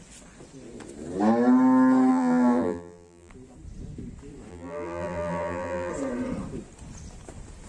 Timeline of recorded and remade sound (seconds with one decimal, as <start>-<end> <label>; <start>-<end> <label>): 0.0-2.1 recorded; 2.1-3.3 remade; 3.3-4.5 recorded; 4.5-5.9 remade; 5.9-7.7 recorded